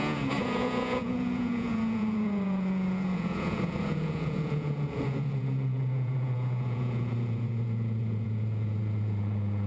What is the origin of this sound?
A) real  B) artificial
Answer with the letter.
B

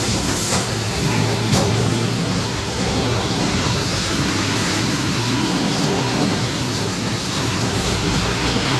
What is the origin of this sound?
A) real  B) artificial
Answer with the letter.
B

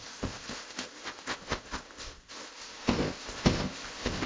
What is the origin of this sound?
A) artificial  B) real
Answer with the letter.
A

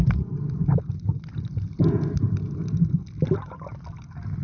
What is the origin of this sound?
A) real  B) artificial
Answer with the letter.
A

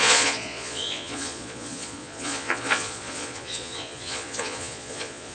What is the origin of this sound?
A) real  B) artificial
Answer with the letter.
B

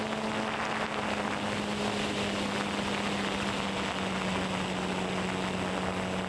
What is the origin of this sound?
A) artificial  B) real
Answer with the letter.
B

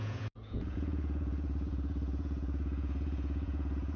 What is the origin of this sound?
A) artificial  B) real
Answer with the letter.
A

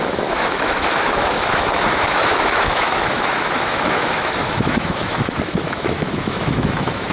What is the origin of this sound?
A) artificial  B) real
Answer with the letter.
A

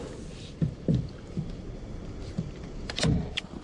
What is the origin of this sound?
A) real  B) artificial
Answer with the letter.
A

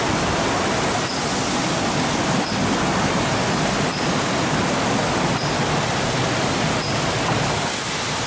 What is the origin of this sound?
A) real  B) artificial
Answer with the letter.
A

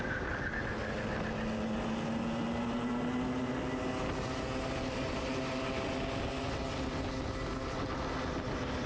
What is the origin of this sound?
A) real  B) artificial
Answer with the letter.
A